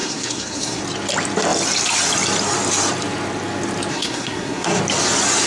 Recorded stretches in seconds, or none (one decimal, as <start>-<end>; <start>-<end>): 0.8-3.9; 4.8-5.5